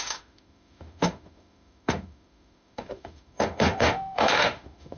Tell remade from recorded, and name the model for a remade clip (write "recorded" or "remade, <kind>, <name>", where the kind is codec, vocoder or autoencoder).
remade, autoencoder, DAC-VAE